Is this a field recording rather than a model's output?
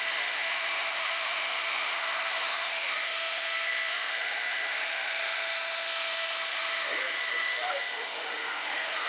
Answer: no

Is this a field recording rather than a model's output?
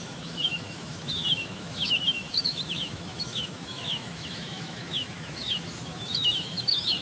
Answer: no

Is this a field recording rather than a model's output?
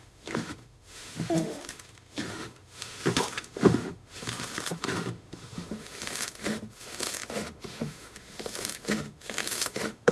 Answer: no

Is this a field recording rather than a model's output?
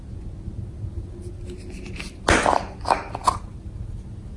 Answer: yes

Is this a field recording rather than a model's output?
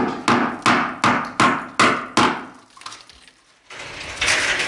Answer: yes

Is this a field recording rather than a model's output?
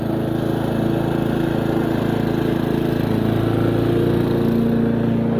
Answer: yes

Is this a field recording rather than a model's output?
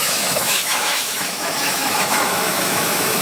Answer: no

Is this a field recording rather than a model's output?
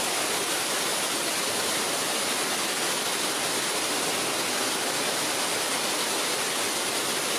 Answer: yes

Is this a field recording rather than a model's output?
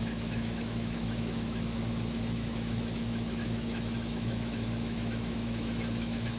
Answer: no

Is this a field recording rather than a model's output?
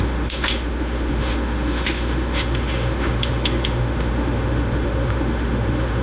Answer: no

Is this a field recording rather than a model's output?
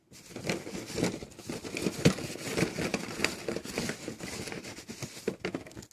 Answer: yes